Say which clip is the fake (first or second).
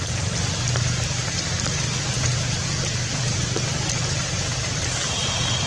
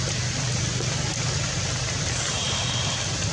first